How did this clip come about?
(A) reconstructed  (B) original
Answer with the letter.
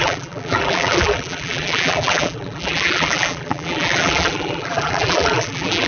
A